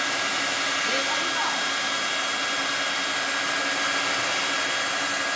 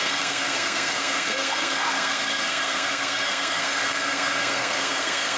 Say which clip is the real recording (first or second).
first